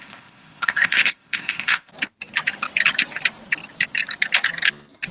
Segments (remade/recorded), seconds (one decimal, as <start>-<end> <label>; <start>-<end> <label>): 0.0-1.9 remade; 1.9-5.1 recorded